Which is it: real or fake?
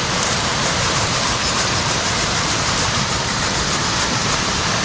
fake